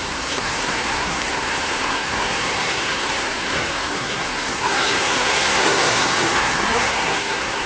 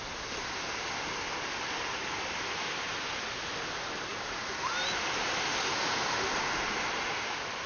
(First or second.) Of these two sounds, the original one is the second